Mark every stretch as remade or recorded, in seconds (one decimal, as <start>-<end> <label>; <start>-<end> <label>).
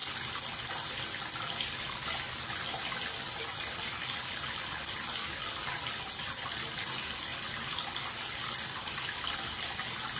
0.0-10.2 recorded